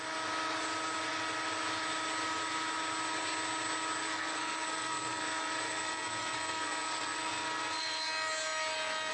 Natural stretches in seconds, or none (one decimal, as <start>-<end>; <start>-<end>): 0.0-4.0; 8.1-9.1